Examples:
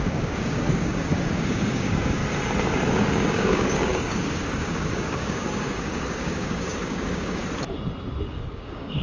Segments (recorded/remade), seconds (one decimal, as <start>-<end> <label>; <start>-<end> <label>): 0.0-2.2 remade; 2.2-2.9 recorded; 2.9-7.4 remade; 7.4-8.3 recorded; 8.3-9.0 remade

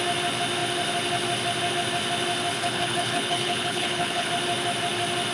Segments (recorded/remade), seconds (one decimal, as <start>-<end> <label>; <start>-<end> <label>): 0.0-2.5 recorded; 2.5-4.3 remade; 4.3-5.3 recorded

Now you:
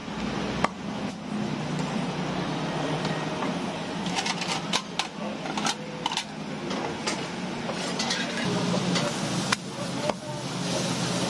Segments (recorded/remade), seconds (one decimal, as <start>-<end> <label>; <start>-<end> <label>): 0.0-11.3 recorded

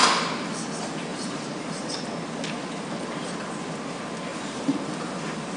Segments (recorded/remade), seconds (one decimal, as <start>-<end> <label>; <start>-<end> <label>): 0.0-1.1 recorded; 1.1-1.7 remade; 1.7-4.3 recorded; 4.3-5.6 remade

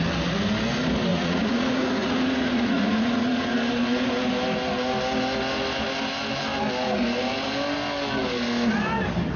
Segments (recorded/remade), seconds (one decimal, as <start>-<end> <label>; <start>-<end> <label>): 0.0-1.1 recorded; 1.1-3.5 remade; 3.5-9.4 recorded

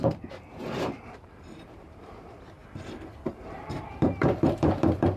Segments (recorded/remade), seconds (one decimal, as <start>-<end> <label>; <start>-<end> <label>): 0.0-2.6 remade; 2.6-3.3 recorded; 3.3-5.2 remade

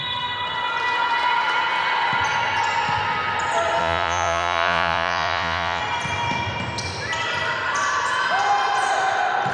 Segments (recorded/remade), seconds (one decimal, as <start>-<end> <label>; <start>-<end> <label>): 0.0-3.8 recorded; 3.8-5.8 remade; 5.8-9.5 recorded

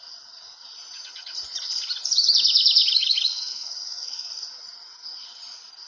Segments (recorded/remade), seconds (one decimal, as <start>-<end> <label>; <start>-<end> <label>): 0.0-3.5 recorded; 3.5-4.3 remade; 4.3-5.9 recorded